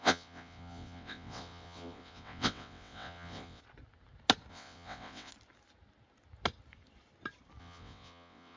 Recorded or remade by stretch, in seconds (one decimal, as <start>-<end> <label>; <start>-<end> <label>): 0.0-3.6 remade; 3.6-4.5 recorded; 4.5-5.3 remade; 5.3-7.6 recorded; 7.6-8.6 remade